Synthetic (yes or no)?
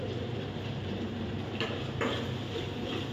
yes